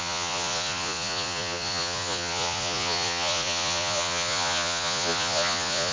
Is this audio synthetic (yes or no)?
yes